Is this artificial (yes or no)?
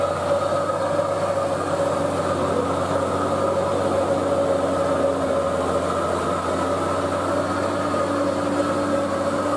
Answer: no